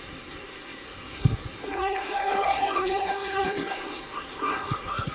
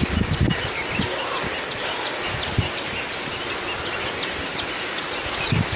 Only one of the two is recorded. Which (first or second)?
second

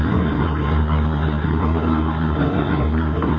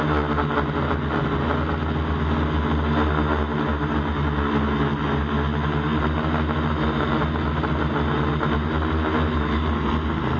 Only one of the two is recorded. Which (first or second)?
second